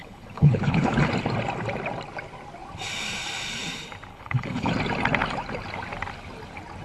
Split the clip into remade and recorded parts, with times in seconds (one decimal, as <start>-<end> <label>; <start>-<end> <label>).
0.0-1.1 remade; 1.1-4.1 recorded; 4.1-4.7 remade; 4.7-6.8 recorded